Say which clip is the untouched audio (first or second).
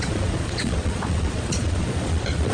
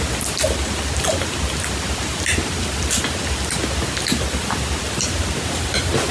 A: second